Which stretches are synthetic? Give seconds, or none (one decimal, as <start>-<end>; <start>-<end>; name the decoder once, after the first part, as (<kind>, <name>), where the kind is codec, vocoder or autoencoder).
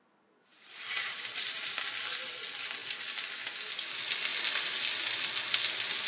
0.5-1.8 (vocoder, BigVGAN v2)